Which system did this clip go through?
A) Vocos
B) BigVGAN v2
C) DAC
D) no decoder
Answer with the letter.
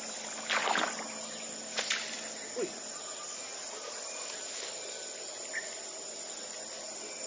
D